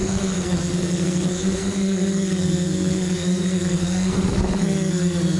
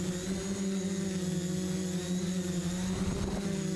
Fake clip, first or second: first